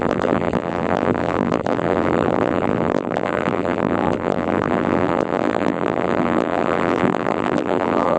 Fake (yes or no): yes